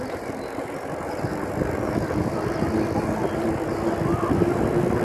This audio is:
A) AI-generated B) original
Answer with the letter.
B